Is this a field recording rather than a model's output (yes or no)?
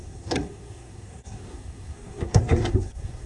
no